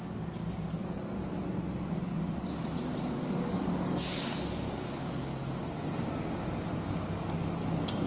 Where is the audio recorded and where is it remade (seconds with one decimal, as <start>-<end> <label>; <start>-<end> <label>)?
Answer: 0.0-0.8 remade; 0.8-3.0 recorded; 3.0-5.3 remade; 5.3-6.5 recorded; 6.5-8.1 remade

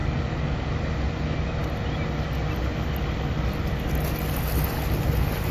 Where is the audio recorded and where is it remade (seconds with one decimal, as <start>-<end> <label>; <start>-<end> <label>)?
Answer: 0.0-5.5 recorded

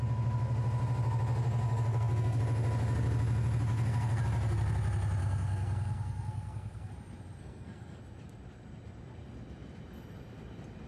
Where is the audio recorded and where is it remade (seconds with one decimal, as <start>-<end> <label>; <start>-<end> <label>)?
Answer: 0.0-1.6 recorded; 1.6-2.4 remade; 2.4-3.7 recorded; 3.7-4.2 remade; 4.2-5.2 recorded; 5.2-6.9 remade; 6.9-7.4 recorded; 7.4-8.0 remade; 8.0-10.9 recorded